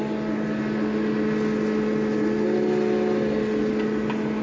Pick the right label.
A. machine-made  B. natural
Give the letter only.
B